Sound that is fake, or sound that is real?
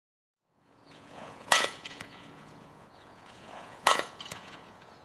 fake